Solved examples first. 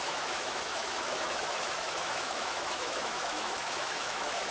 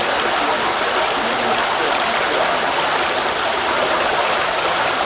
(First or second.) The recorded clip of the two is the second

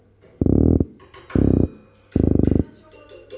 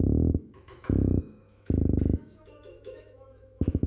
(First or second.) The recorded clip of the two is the first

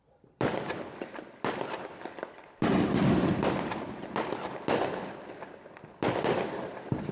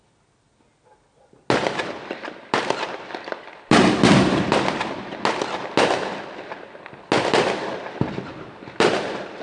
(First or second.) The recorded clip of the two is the second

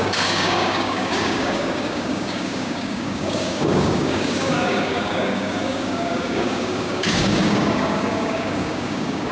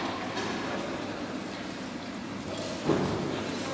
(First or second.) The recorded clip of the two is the second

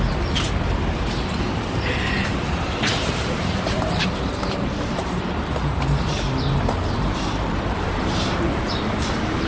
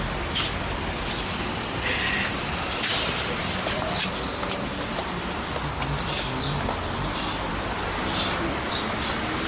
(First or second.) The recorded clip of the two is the second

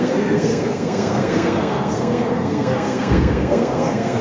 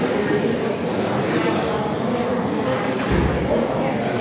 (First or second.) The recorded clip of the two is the second